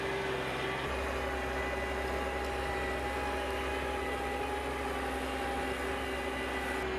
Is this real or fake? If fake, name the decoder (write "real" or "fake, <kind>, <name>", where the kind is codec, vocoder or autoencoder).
real